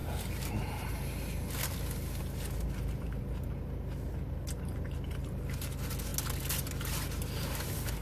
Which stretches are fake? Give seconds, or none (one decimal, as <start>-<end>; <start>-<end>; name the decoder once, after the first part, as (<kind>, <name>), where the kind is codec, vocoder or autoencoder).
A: none

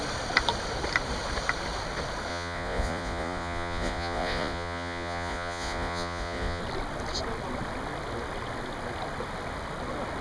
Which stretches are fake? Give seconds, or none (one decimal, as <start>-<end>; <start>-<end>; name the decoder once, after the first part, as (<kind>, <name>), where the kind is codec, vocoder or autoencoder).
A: 2.3-6.6 (vocoder, Vocos)